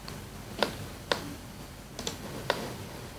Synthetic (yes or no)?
no